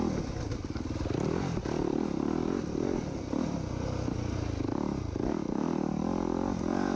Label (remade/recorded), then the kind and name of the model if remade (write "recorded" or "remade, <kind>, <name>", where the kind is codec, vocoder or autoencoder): recorded